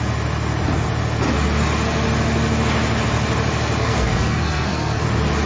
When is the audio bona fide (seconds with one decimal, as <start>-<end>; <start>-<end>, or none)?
0.0-3.8; 5.0-5.5

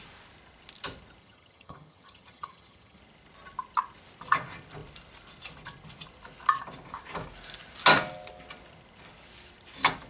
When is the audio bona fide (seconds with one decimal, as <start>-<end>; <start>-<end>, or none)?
0.0-1.2; 3.0-10.1

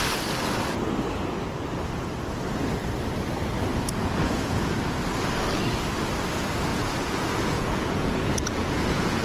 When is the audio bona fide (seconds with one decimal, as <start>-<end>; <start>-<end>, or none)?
0.0-3.7; 4.7-6.7

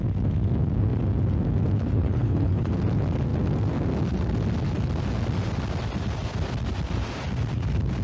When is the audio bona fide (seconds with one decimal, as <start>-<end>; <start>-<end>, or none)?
0.0-1.8; 2.7-8.0

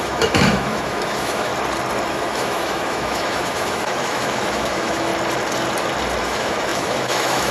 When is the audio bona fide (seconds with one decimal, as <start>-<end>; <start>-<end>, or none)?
1.5-2.1; 5.1-6.2

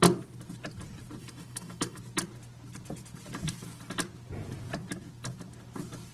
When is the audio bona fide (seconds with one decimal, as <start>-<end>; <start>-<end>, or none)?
0.0-1.2; 2.0-6.1

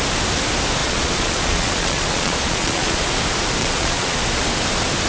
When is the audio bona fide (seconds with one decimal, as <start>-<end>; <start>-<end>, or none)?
0.0-0.8; 3.0-3.6; 4.2-5.1